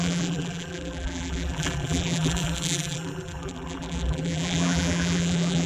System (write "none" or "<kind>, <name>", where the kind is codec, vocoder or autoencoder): vocoder, BigVGAN v2